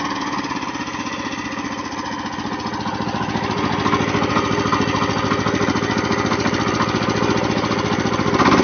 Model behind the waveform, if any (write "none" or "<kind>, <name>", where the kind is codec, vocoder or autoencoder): none